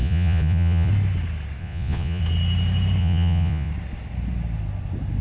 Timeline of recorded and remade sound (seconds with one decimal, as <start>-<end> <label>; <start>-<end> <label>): 0.0-0.9 remade; 0.9-1.6 recorded; 1.6-2.2 remade; 2.2-3.0 recorded; 3.0-3.7 remade; 3.7-5.2 recorded